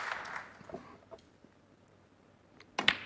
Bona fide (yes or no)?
yes